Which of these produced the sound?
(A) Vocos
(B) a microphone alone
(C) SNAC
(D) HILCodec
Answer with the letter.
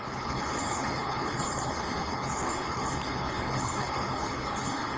D